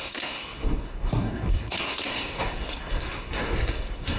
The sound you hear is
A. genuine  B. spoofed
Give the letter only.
B